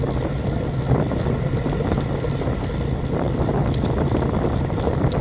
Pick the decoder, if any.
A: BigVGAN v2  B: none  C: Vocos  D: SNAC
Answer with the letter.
B